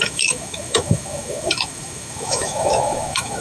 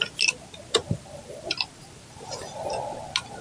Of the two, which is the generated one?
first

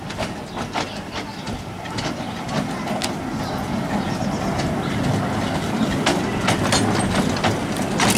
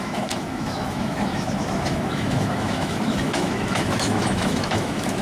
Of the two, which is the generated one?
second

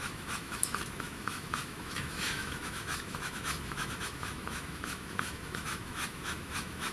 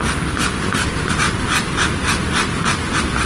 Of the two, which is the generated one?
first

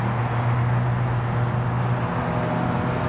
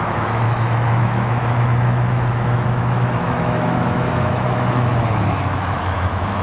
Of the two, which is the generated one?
second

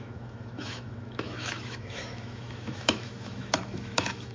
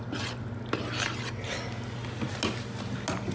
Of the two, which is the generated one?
first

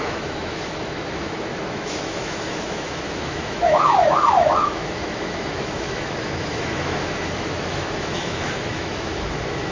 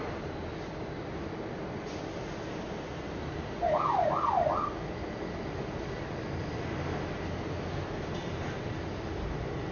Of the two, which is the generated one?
first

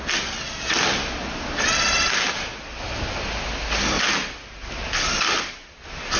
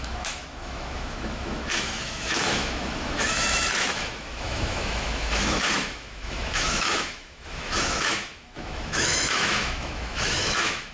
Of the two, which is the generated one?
second